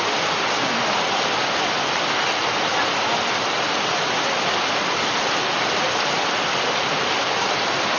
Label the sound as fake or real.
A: real